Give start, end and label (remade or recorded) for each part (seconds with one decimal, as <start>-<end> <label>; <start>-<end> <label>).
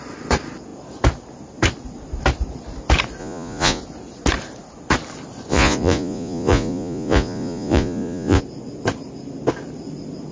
0.0-3.2 recorded; 3.2-3.8 remade; 3.8-5.5 recorded; 5.5-8.4 remade; 8.4-10.3 recorded